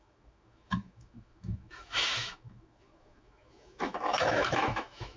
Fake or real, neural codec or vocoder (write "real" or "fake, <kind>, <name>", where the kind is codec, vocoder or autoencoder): fake, autoencoder, DAC-VAE